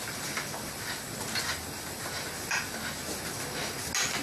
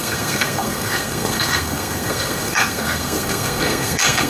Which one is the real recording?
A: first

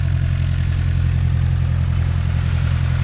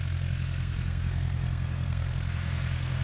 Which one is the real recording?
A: first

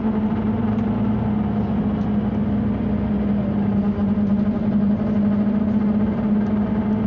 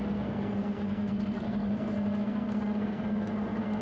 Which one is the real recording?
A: first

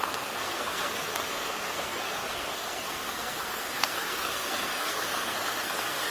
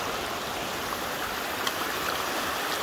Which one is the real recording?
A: second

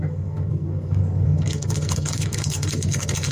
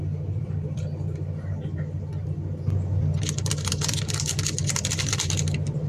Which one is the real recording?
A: second